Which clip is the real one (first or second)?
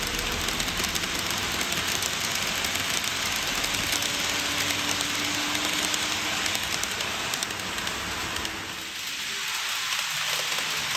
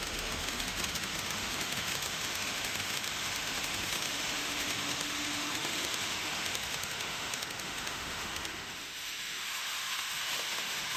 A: first